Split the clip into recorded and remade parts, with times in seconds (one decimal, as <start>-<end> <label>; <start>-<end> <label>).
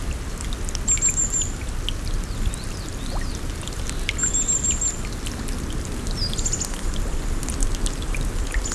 0.0-4.2 recorded; 4.2-5.0 remade; 5.0-8.7 recorded